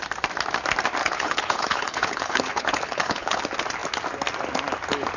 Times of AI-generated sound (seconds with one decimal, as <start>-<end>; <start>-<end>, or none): 1.0-3.4